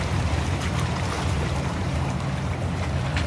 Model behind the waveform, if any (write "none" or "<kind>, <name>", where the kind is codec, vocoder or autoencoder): vocoder, BigVGAN v2